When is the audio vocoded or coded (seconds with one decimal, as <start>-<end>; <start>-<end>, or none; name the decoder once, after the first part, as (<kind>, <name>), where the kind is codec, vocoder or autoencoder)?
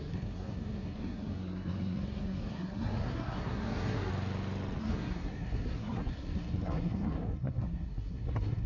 0.0-4.1 (codec, SNAC); 4.8-8.7